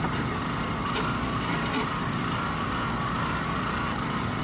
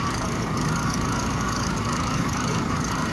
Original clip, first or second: first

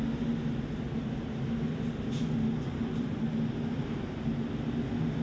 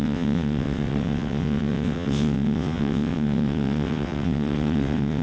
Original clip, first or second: first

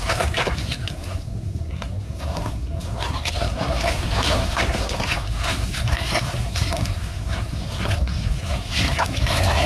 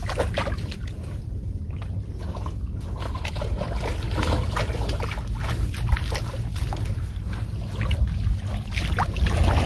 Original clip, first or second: second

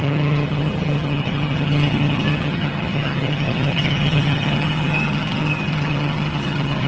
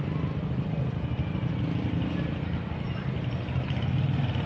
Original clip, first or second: second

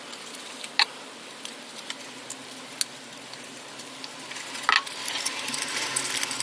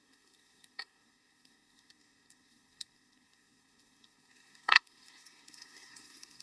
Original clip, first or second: first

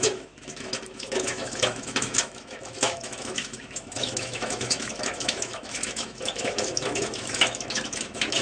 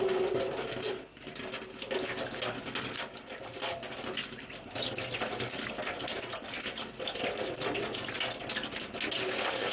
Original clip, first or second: second